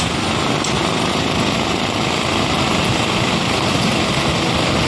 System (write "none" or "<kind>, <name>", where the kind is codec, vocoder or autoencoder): none